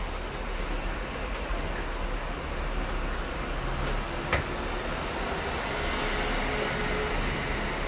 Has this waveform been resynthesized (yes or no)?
no